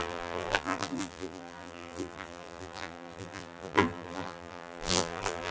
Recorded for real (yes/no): no